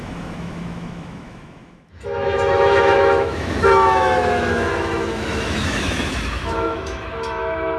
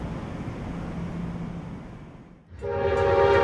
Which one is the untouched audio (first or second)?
second